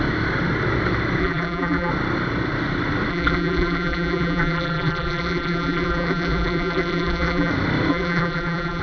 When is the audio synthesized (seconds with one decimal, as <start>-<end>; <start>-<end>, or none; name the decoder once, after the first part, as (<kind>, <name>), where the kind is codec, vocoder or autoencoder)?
1.2-1.9 (vocoder, BigVGAN v2); 3.1-7.5; 7.9-8.8